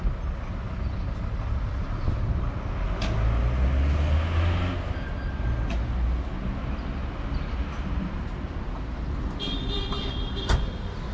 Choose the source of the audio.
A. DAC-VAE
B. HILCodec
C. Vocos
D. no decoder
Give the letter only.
D